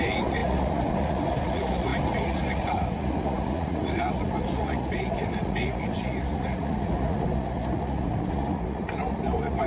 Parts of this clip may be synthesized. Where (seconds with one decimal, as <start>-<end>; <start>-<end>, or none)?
0.0-9.7